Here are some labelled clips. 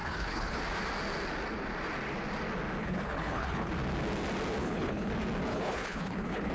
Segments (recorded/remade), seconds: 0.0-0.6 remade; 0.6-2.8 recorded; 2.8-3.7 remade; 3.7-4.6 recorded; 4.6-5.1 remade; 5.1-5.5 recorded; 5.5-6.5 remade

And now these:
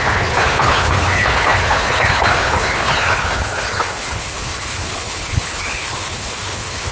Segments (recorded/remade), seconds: 0.0-6.9 remade

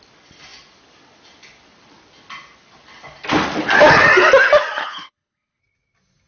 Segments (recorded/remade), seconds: 0.0-4.8 recorded; 4.8-5.6 remade; 5.6-6.3 recorded

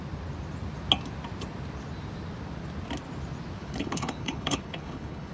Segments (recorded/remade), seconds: 0.0-3.6 recorded; 3.6-5.3 remade

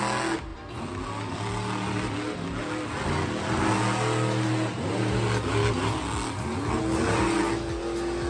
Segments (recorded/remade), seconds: 0.0-8.3 recorded

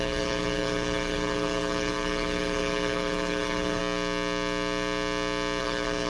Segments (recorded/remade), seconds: 0.0-3.8 remade; 3.8-5.6 recorded; 5.6-6.1 remade

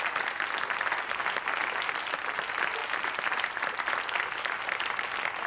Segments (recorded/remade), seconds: 0.0-5.5 recorded